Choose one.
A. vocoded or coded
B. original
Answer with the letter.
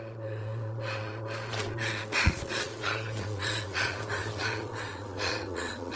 A